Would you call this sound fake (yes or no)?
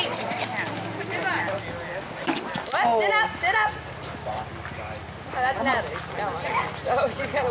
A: no